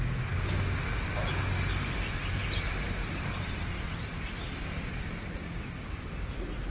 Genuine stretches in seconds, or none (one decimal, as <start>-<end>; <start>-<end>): 0.0-2.4; 4.9-6.7